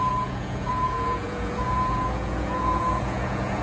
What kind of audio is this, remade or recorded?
remade